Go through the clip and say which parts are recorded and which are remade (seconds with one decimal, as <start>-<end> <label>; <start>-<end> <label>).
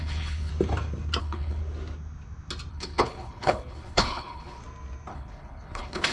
0.0-0.5 remade; 0.5-1.2 recorded; 1.2-1.6 remade; 1.6-2.7 recorded; 2.7-4.6 remade; 4.6-5.1 recorded; 5.1-6.1 remade